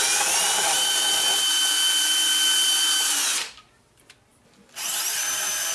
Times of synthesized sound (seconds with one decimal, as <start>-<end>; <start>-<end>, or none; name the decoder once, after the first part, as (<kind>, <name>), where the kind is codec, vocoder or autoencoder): 0.0-5.7 (vocoder, BigVGAN v2)